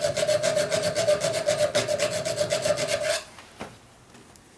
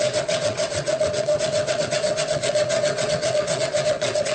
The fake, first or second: second